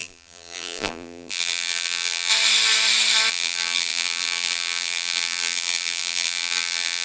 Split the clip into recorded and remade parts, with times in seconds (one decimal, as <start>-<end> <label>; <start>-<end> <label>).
0.0-2.3 remade; 2.3-3.3 recorded; 3.3-7.0 remade